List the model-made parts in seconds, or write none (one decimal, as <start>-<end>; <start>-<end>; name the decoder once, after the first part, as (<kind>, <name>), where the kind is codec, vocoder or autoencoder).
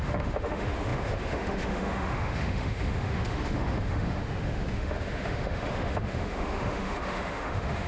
0.0-7.9 (autoencoder, DAC-VAE)